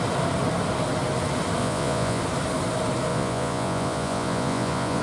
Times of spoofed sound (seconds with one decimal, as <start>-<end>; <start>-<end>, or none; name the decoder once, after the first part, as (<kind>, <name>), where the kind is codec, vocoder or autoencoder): 1.6-2.2 (vocoder, Vocos); 3.1-5.0